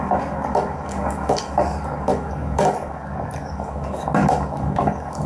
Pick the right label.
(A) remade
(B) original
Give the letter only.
A